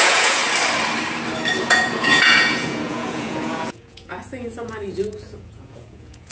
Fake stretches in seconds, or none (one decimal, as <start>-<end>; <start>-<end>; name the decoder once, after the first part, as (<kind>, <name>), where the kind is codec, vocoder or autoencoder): 0.0-0.4 (vocoder, Vocos); 1.6-6.3